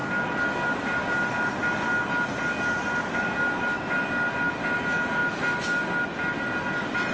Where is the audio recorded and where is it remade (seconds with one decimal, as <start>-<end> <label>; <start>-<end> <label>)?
0.0-7.1 recorded